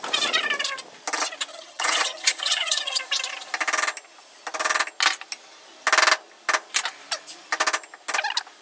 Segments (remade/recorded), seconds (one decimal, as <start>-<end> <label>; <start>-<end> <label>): 0.0-1.5 recorded; 1.5-3.0 remade; 3.0-8.6 recorded